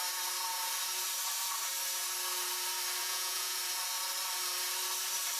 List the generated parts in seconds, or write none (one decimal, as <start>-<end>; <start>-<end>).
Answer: 3.0-3.6